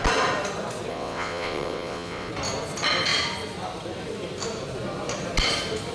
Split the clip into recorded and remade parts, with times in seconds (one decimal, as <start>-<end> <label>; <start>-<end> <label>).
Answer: 0.0-0.9 recorded; 0.9-2.3 remade; 2.3-5.9 recorded